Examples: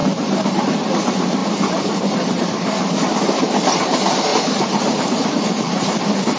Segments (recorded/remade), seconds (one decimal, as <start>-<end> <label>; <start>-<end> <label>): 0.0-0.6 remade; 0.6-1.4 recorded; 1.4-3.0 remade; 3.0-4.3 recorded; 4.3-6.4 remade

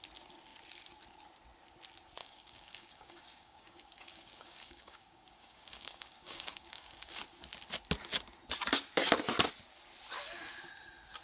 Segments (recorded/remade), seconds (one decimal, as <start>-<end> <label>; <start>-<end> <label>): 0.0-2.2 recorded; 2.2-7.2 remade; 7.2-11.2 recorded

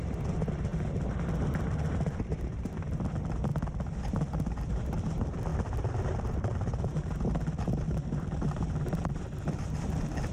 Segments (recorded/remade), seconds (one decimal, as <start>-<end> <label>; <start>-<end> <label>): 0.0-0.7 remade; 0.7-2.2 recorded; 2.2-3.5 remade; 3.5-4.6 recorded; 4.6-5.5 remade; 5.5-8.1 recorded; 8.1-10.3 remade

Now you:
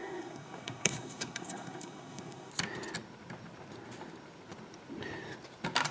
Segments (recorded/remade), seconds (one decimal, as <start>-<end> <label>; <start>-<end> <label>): 0.0-2.5 remade; 2.5-5.9 recorded

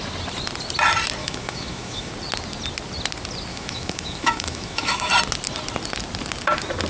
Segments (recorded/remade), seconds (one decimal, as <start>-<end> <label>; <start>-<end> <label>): 0.0-1.2 recorded; 1.2-2.1 remade; 2.1-3.5 recorded; 3.5-5.1 remade; 5.1-6.9 recorded

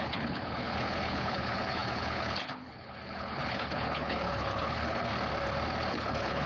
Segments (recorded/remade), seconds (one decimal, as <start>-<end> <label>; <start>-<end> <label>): 0.0-5.1 remade; 5.1-5.9 recorded; 5.9-6.5 remade

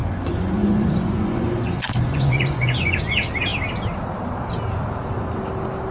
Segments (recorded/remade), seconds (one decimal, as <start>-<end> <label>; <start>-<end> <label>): 0.0-3.0 remade; 3.0-5.9 recorded

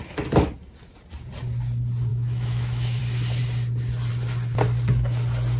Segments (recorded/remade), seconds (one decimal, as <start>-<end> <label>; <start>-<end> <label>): 0.0-2.1 recorded; 2.1-3.0 remade; 3.0-5.6 recorded